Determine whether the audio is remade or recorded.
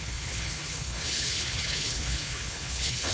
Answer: remade